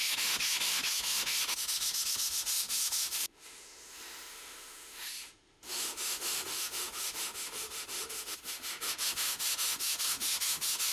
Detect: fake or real fake